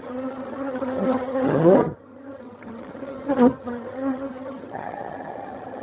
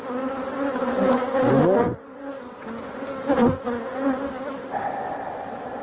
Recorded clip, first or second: second